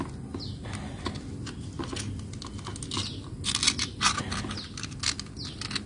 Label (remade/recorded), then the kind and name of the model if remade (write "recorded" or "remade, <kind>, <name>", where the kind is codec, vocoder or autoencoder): recorded